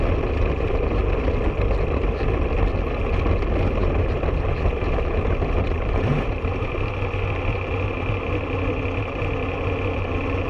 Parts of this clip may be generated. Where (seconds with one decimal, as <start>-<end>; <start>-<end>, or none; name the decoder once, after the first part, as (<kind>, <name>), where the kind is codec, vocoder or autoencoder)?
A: 0.4-1.0 (vocoder, BigVGAN v2); 3.8-6.7